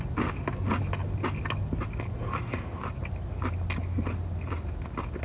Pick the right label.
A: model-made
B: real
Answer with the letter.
B